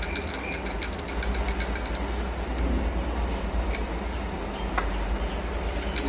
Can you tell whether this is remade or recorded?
recorded